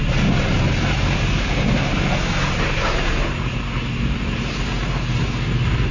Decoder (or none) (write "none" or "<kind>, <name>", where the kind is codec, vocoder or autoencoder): none